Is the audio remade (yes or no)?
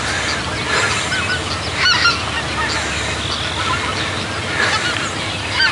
no